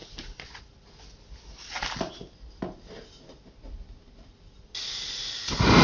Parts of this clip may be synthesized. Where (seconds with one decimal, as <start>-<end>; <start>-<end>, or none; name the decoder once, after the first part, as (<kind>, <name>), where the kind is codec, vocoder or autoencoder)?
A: none